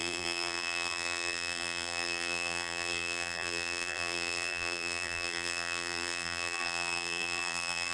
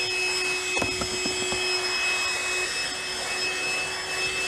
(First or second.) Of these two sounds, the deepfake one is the first